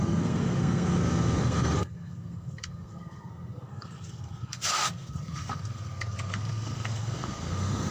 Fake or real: fake